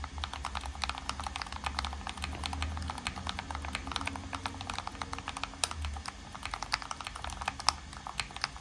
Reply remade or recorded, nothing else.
recorded